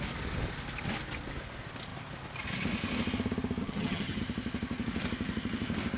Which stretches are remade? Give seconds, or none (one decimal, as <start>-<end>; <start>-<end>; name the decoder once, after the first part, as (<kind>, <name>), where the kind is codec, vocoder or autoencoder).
3.6-4.2 (vocoder, HiFi-GAN)